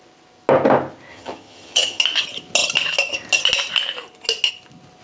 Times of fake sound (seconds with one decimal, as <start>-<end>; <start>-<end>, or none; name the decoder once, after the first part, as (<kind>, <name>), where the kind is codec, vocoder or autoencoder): 1.1-2.0 (vocoder, HiFi-GAN)